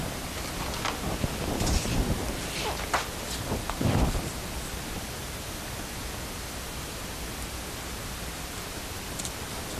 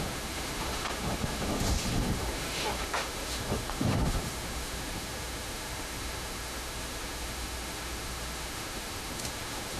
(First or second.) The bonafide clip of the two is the first